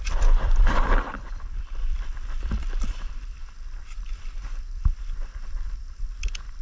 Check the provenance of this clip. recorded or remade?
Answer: remade